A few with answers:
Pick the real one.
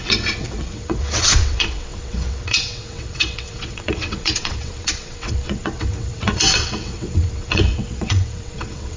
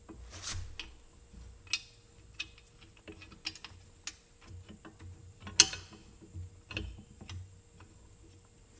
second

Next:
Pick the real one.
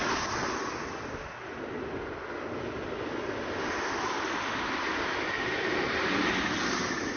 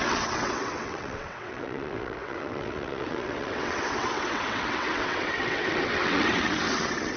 first